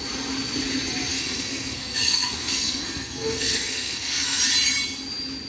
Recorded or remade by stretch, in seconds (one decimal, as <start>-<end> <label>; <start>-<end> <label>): 0.0-1.1 recorded; 1.1-4.4 remade; 4.4-5.5 recorded